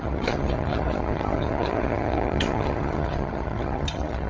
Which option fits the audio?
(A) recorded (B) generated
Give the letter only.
B